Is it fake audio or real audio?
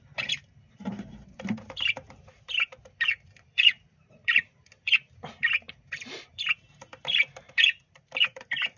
fake